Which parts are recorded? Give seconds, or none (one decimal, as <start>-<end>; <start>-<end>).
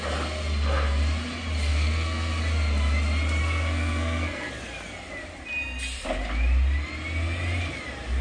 0.0-1.7; 2.3-3.4; 4.5-8.2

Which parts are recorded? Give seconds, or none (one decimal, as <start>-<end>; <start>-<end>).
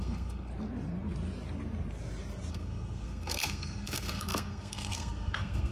0.5-2.5